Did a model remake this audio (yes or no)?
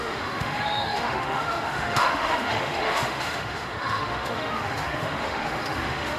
yes